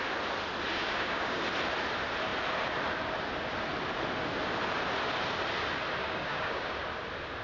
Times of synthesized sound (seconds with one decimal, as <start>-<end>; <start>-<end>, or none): 0.7-1.4; 6.0-6.8